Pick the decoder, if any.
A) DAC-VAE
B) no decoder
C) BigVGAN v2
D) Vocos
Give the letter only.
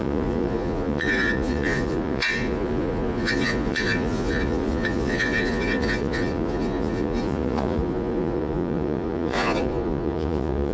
D